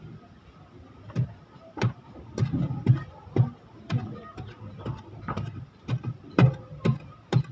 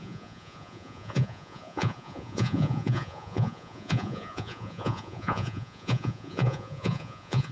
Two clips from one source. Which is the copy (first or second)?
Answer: second